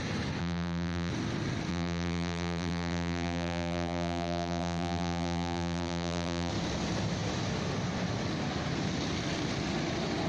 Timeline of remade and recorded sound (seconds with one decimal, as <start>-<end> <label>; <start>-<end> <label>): 0.0-0.4 recorded; 0.4-1.1 remade; 1.1-1.7 recorded; 1.7-6.5 remade; 6.5-10.3 recorded